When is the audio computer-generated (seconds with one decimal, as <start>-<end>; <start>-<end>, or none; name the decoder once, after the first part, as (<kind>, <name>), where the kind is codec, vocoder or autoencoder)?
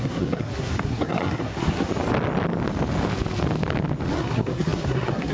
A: 0.0-1.9 (codec, SNAC); 4.1-5.3